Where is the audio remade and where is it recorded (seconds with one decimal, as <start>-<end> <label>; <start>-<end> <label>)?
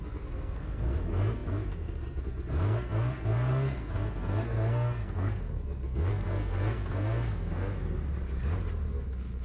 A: 0.0-8.1 remade; 8.1-8.9 recorded; 8.9-9.4 remade